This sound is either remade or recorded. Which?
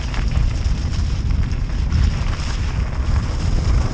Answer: recorded